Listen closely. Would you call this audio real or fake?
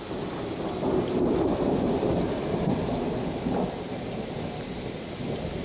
real